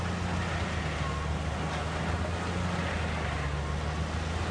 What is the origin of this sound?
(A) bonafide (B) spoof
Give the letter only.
A